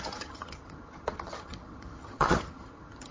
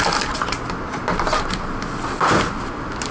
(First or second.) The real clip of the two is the second